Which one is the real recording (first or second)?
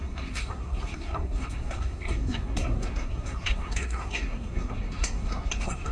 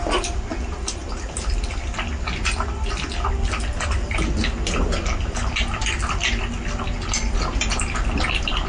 second